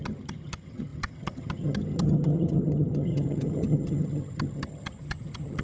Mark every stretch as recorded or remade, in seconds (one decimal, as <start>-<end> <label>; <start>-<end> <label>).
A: 0.0-5.6 remade